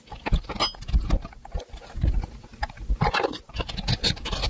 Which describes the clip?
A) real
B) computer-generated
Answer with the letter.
A